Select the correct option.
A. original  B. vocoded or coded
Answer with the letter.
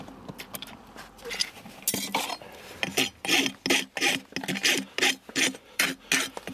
A